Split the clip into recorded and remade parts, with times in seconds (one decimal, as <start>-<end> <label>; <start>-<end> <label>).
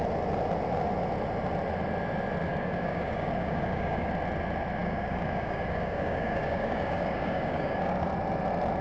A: 0.0-2.5 recorded; 2.5-4.1 remade; 4.1-4.8 recorded; 4.8-8.1 remade; 8.1-8.8 recorded